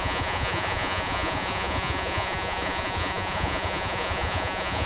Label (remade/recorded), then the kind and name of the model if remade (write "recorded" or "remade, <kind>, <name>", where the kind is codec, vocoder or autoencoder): remade, vocoder, Vocos